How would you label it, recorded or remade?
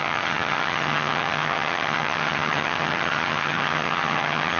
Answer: remade